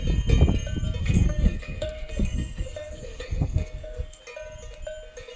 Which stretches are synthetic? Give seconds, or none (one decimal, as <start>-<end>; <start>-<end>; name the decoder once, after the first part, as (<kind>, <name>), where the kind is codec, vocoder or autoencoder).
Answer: 1.0-4.2 (codec, SNAC)